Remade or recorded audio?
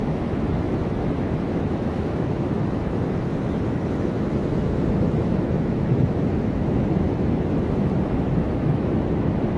remade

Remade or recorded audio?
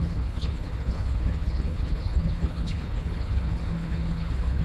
remade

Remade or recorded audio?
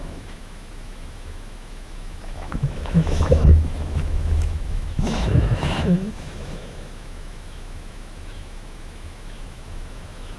remade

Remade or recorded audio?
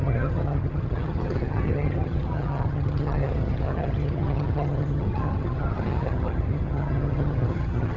remade